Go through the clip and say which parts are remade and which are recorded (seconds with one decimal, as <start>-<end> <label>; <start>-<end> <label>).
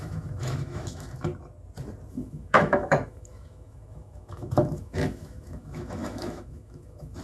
0.0-1.3 remade; 1.3-2.1 recorded; 2.1-7.2 remade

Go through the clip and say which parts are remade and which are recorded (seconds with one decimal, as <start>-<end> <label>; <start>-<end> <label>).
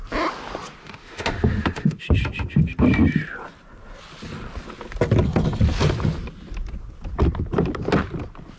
0.0-0.8 recorded; 0.8-2.0 remade; 2.0-8.6 recorded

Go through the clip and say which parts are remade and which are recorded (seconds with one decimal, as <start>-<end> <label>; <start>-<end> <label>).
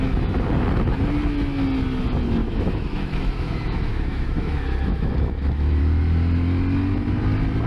0.0-2.4 recorded; 2.4-5.8 remade; 5.8-7.7 recorded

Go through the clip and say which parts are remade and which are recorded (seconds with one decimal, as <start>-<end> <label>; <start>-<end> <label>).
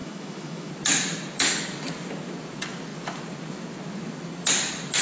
0.0-0.7 remade; 0.7-5.0 recorded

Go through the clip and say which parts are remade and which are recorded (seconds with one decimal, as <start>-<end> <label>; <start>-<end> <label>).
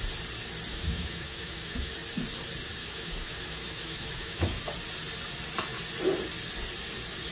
0.0-0.7 recorded; 0.7-1.9 remade; 1.9-2.8 recorded; 2.8-4.6 remade; 4.6-7.3 recorded